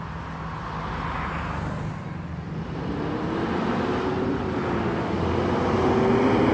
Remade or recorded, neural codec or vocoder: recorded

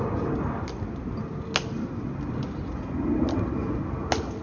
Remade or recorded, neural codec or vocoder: recorded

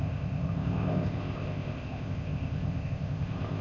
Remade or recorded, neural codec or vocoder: remade, codec, ZipCodec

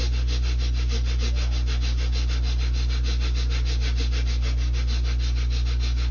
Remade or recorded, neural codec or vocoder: recorded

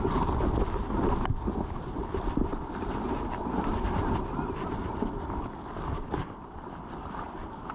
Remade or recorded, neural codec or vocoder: recorded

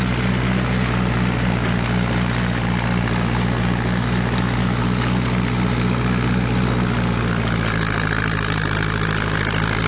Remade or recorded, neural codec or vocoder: recorded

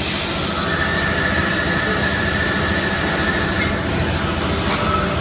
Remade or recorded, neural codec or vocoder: recorded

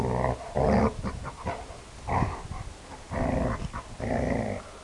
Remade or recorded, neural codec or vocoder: recorded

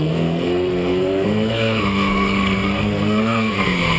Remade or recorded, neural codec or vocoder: remade, codec, SNAC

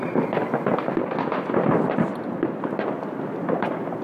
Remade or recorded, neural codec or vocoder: recorded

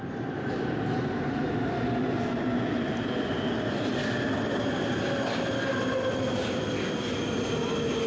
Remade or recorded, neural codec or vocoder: recorded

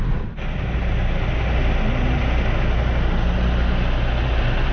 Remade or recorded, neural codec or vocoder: recorded